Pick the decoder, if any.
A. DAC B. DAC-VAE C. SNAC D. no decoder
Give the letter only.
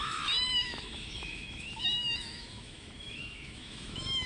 B